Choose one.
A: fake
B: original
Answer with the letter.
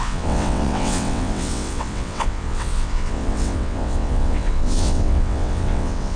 A